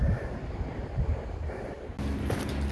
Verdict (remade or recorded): recorded